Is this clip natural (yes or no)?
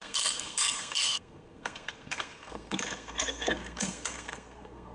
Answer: no